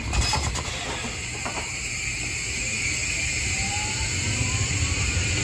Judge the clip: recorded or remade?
remade